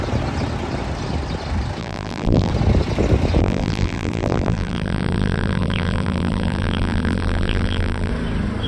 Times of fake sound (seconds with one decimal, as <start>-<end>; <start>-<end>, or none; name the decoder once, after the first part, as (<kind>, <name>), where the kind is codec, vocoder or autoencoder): 1.8-2.5 (vocoder, BigVGAN v2); 3.4-8.1